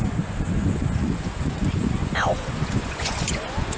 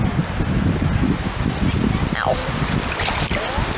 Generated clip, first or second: first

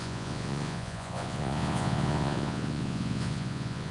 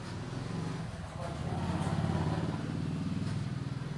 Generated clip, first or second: first